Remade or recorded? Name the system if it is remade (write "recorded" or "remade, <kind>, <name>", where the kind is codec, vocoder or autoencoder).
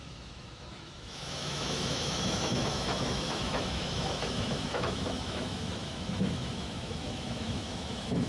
remade, autoencoder, DAC-VAE